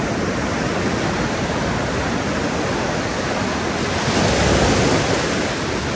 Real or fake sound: real